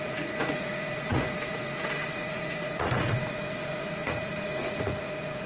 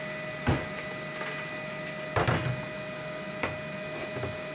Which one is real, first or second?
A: second